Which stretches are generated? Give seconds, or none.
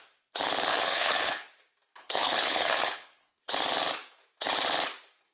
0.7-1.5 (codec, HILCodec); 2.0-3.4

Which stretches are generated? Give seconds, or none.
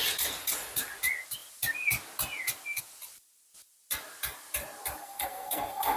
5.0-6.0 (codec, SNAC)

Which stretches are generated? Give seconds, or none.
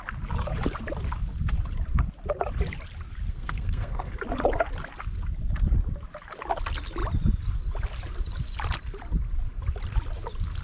3.3-4.1 (codec, SNAC)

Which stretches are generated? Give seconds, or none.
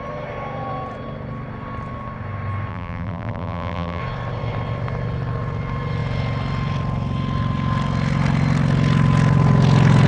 2.7-4.0 (vocoder, BigVGAN v2)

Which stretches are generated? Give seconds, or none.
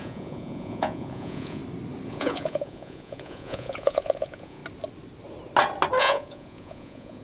0.0-1.6 (vocoder, Vocos); 2.1-4.6; 6.0-7.2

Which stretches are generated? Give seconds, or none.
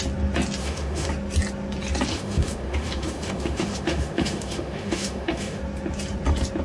0.6-1.1 (autoencoder, DAC-VAE); 2.1-5.6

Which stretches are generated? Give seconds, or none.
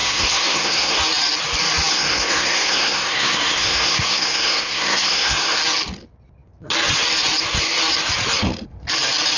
0.0-1.0 (codec, SNAC); 1.9-5.6